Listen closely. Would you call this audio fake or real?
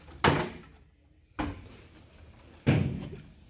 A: real